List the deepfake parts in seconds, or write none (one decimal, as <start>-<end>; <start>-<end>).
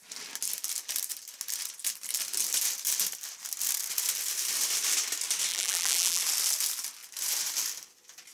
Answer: 5.5-6.2